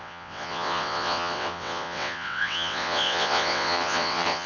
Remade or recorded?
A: remade